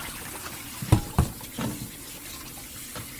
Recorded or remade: recorded